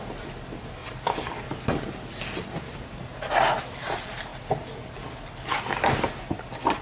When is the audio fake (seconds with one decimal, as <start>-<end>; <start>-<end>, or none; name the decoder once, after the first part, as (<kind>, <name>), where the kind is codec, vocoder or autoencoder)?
4.3-6.1 (vocoder, BigVGAN v2)